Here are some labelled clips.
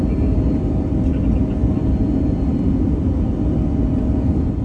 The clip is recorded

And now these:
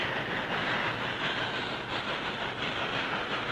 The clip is recorded